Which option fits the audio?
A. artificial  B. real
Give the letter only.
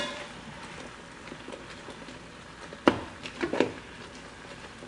A